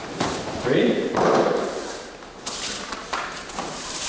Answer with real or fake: fake